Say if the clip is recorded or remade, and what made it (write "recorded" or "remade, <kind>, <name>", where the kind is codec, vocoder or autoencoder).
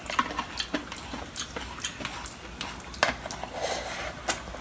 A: recorded